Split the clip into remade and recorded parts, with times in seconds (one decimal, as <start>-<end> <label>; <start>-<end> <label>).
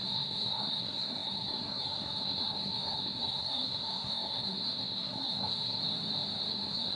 0.0-5.8 remade; 5.8-6.5 recorded; 6.5-7.0 remade